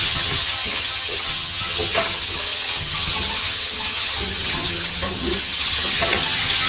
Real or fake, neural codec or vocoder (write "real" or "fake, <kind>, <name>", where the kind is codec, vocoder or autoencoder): fake, vocoder, HiFi-GAN